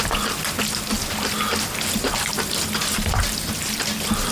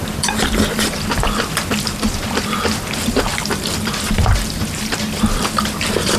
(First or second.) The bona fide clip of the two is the first